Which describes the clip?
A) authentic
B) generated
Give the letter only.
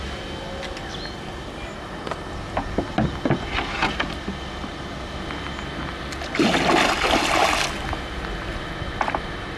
A